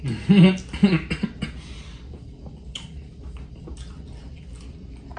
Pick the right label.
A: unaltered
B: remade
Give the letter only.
A